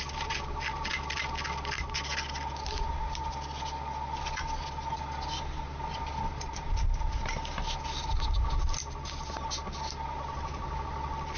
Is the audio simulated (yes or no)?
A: no